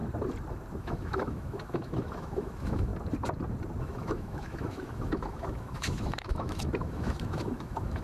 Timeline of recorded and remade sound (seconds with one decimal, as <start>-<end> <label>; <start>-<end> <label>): 0.0-0.8 recorded; 0.8-2.9 remade; 2.9-3.8 recorded; 3.8-8.0 remade